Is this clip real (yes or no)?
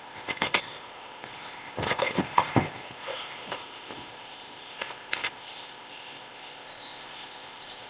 no